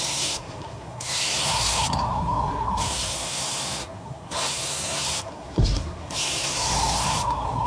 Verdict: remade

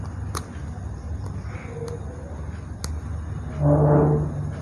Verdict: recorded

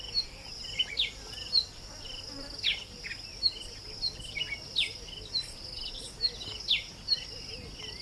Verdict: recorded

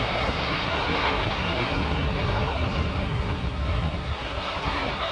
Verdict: remade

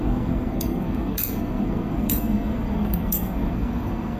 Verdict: remade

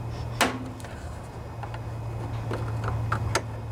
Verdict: recorded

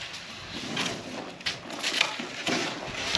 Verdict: recorded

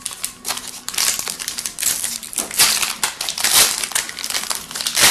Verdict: recorded